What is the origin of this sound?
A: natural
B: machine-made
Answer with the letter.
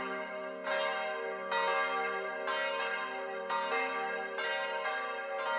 A